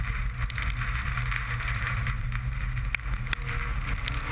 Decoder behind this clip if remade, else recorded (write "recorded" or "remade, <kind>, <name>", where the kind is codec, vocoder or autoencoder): recorded